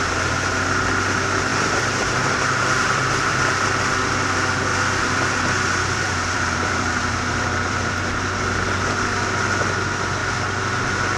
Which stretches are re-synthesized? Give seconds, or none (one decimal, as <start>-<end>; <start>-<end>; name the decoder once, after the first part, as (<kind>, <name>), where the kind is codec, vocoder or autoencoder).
1.5-3.4 (vocoder, BigVGAN v2); 4.7-8.0